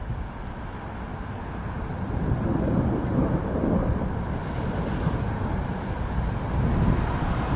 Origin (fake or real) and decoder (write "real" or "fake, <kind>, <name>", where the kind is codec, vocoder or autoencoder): real